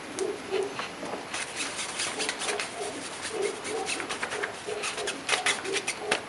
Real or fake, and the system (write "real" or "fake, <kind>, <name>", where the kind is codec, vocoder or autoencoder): real